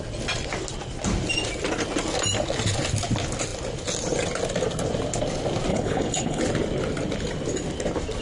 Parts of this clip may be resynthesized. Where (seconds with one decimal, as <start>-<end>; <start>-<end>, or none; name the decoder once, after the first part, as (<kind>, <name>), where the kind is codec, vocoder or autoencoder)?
5.7-6.4 (codec, HILCodec)

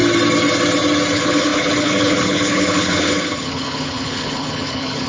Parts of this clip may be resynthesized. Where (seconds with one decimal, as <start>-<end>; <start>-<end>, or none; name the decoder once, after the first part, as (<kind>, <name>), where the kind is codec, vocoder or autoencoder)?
1.1-5.1 (codec, HILCodec)

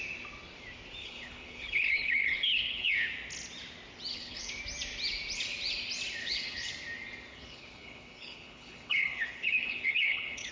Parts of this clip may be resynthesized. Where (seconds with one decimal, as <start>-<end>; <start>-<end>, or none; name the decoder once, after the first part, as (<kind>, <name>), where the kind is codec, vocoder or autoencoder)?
1.0-2.9 (codec, HILCodec); 4.1-4.6; 6.2-6.7; 7.3-10.5

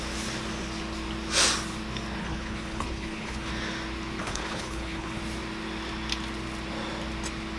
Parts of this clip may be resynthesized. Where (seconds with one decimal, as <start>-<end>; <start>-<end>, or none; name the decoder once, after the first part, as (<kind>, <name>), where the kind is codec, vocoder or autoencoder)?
2.2-3.5 (codec, HILCodec); 4.2-5.2

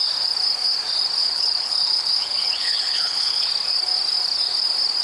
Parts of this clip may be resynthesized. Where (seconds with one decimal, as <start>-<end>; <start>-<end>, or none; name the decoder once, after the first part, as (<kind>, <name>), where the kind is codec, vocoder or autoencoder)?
1.2-3.5 (codec, HILCodec)

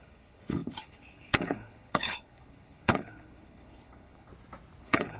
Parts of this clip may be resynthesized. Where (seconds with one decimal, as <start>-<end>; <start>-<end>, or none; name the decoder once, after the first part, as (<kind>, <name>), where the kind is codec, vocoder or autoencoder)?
0.0-4.3 (codec, HILCodec); 4.8-5.2